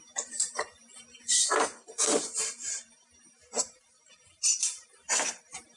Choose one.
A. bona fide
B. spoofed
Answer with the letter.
B